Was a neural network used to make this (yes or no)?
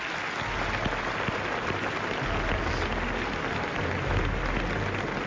no